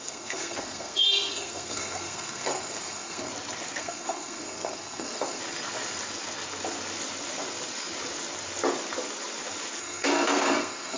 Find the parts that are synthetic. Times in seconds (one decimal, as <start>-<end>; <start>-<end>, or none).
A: 0.0-3.3; 3.8-5.4; 9.8-11.0